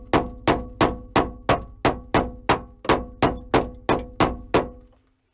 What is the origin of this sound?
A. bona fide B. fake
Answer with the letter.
A